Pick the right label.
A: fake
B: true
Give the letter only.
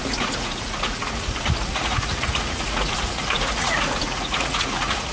A